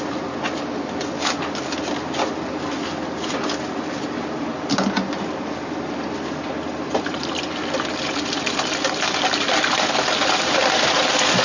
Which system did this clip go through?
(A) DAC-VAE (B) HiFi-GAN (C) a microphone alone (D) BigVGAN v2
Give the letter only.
C